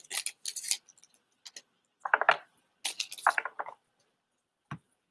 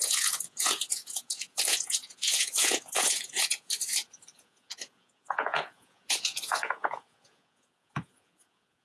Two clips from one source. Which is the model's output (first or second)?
second